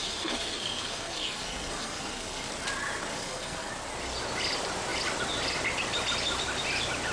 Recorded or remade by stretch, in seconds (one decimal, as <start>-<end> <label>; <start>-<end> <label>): 0.0-2.5 remade; 2.5-3.1 recorded; 3.1-3.7 remade; 3.7-7.1 recorded